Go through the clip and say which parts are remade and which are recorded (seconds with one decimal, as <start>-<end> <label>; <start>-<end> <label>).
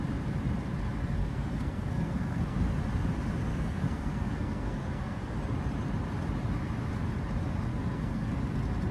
0.0-1.2 recorded; 1.2-2.7 remade; 2.7-3.5 recorded; 3.5-5.4 remade; 5.4-7.7 recorded; 7.7-8.3 remade; 8.3-8.9 recorded